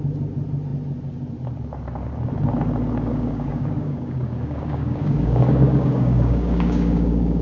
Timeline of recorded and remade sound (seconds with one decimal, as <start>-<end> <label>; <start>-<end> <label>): 0.0-3.1 recorded; 3.1-7.4 remade